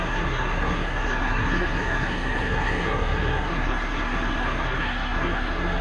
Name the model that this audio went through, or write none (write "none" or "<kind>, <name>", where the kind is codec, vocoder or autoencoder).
codec, SNAC